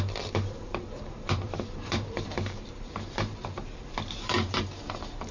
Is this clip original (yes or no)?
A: no